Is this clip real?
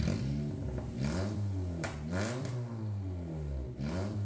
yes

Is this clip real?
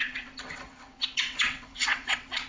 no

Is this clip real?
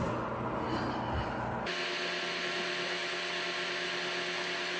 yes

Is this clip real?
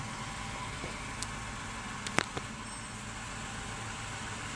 yes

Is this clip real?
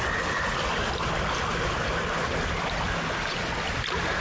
yes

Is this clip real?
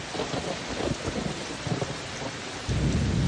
yes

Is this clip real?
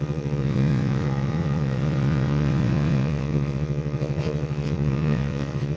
no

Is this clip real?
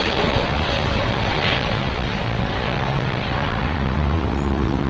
no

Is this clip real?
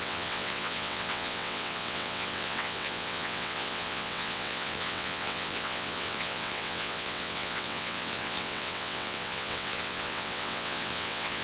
no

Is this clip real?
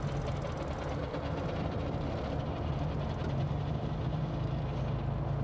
yes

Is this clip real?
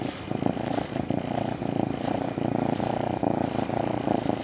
yes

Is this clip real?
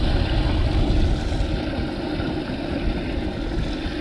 yes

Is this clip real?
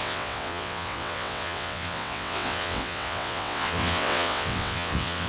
no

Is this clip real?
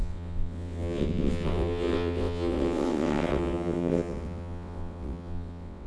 no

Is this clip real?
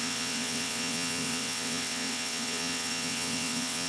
no